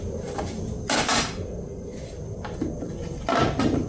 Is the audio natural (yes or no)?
yes